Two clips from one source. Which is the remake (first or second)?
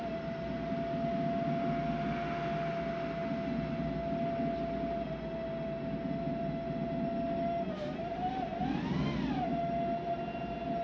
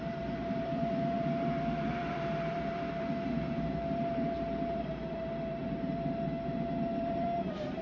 second